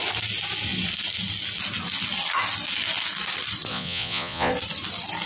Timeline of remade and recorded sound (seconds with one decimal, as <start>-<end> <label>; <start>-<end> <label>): 0.0-3.7 recorded; 3.7-4.5 remade; 4.5-5.3 recorded